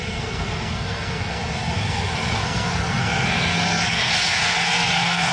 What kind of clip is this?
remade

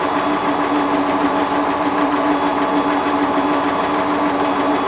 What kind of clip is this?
recorded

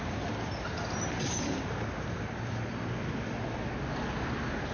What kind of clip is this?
recorded